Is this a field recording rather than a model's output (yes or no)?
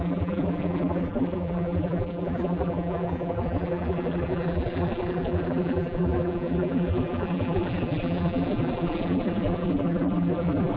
no